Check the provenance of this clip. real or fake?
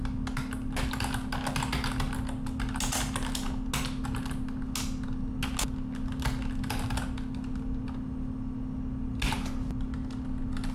real